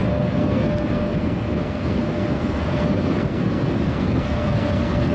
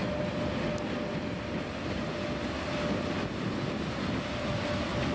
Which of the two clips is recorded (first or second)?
second